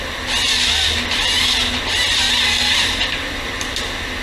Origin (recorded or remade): recorded